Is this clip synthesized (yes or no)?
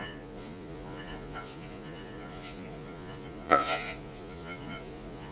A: yes